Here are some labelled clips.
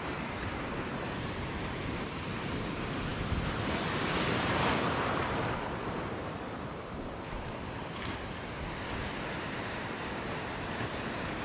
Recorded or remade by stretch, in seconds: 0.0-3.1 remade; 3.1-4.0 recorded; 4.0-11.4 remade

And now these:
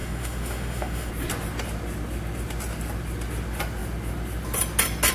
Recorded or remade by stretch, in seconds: 0.0-1.1 remade; 1.1-5.1 recorded

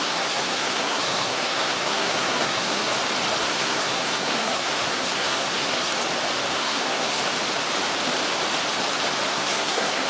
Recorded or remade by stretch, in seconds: 0.0-2.8 remade; 2.8-3.4 recorded; 3.4-5.9 remade; 5.9-6.5 recorded; 6.5-7.2 remade; 7.2-9.3 recorded; 9.3-10.1 remade